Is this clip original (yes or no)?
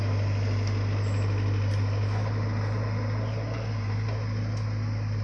yes